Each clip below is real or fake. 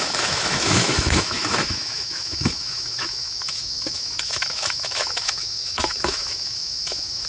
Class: fake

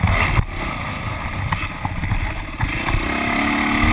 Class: real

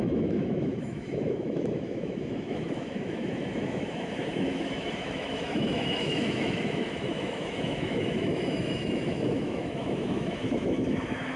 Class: fake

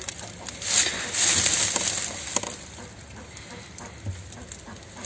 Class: real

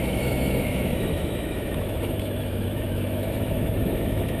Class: fake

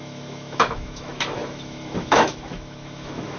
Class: fake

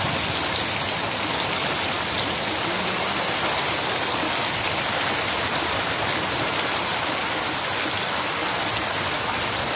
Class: real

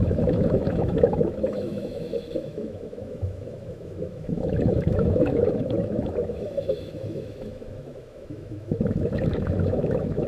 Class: fake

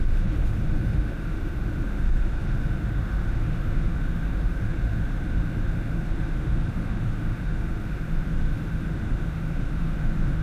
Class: fake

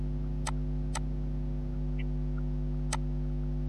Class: real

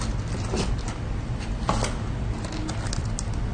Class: real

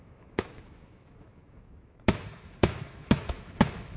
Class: fake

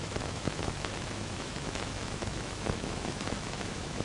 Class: fake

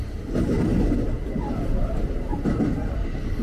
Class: real